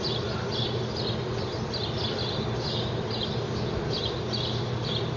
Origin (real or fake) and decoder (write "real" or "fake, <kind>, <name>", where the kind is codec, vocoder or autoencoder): real